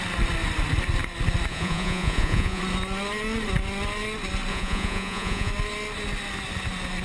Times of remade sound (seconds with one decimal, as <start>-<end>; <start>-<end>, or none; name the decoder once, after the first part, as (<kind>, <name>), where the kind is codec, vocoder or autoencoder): 1.5-2.6 (vocoder, Vocos); 4.5-5.5